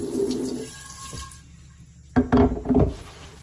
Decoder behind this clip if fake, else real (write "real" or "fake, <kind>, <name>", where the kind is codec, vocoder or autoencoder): real